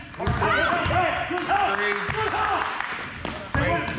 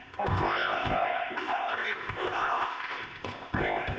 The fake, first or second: second